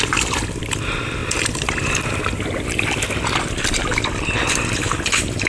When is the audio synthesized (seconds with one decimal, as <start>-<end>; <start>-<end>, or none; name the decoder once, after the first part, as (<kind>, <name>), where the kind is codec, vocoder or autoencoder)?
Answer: none